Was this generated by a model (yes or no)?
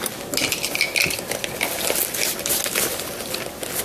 no